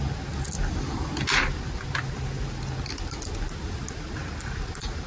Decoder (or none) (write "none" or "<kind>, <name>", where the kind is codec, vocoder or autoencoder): none